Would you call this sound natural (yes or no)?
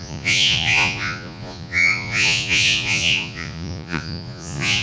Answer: no